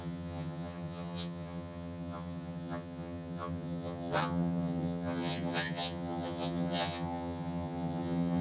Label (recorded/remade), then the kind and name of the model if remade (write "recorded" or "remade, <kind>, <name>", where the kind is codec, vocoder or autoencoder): remade, vocoder, HiFi-GAN